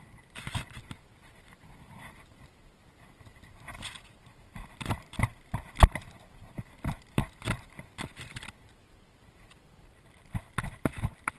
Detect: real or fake fake